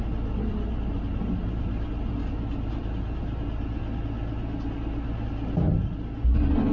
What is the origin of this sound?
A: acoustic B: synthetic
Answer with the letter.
A